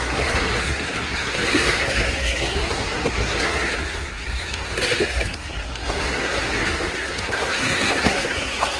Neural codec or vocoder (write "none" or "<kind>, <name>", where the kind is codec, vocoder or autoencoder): codec, SNAC